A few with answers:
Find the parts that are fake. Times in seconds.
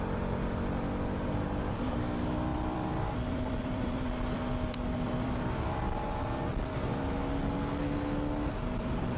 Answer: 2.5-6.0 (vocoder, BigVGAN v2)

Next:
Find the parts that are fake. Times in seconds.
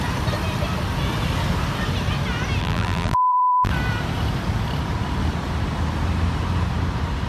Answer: 2.6-3.7 (vocoder, BigVGAN v2)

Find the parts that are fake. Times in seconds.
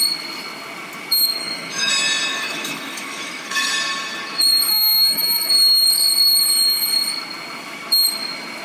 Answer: 1.4-1.9 (autoencoder, DAC-VAE); 2.3-3.7; 4.7-5.5